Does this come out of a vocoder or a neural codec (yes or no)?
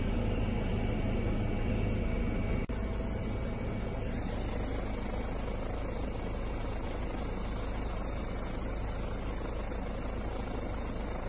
no